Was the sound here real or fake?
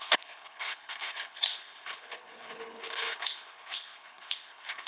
fake